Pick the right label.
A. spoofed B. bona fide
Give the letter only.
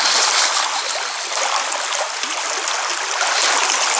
B